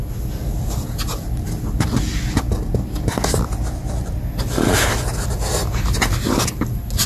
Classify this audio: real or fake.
real